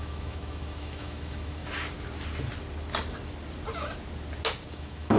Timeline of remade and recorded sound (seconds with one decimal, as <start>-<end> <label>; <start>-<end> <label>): 0.0-1.6 remade; 1.6-4.7 recorded; 4.7-5.2 remade